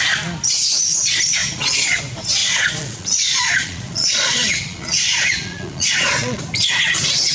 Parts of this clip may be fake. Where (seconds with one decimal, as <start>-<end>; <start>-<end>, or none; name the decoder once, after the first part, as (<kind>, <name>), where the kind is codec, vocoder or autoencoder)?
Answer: 1.4-2.0 (vocoder, Vocos); 2.4-6.4